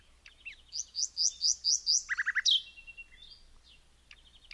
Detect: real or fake real